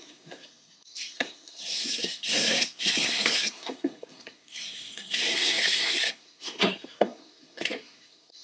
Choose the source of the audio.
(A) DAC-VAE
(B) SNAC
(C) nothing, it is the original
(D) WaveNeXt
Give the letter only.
B